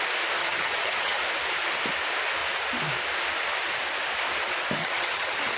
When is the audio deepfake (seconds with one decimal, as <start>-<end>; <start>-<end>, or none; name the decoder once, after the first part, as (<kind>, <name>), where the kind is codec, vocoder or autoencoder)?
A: 0.4-1.2 (vocoder, HiFi-GAN); 4.8-5.6

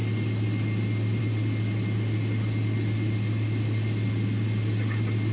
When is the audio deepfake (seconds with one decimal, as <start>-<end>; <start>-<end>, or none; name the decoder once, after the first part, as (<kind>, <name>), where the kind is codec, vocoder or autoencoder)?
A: none

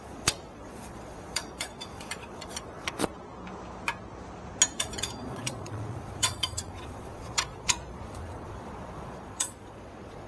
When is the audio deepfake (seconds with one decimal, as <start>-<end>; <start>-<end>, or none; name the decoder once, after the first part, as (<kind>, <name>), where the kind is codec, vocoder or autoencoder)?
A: 0.0-3.1 (vocoder, Vocos); 4.8-10.3

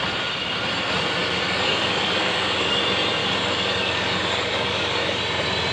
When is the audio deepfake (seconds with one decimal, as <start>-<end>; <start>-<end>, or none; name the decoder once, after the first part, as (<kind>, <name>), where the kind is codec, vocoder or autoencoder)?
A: 1.2-2.8 (codec, DAC); 3.2-5.2

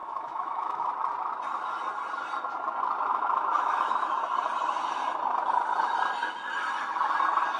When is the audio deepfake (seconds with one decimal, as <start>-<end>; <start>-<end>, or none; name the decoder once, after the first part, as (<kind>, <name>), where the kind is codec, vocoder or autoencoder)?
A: 0.0-0.9 (autoencoder, DAC-VAE); 3.1-4.2

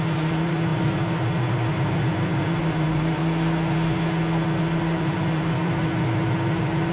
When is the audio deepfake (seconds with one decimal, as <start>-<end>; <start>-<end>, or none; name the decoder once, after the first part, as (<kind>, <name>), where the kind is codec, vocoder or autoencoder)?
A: 0.0-3.2 (vocoder, BigVGAN v2); 4.6-6.9

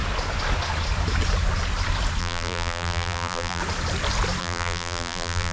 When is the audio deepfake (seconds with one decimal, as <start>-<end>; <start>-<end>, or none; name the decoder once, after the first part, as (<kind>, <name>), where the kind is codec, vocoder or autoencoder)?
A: 2.2-3.6 (vocoder, BigVGAN v2); 4.4-5.5